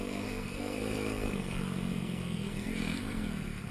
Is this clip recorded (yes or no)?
no